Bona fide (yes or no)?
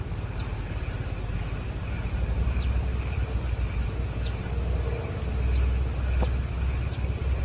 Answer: yes